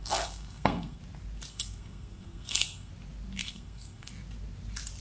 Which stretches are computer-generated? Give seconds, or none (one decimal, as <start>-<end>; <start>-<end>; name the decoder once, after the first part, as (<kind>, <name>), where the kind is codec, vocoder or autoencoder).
0.0-1.0 (codec, SNAC); 1.5-2.9; 3.4-4.1